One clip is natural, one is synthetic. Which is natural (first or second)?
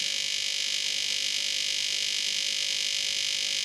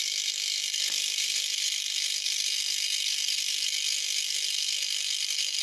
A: first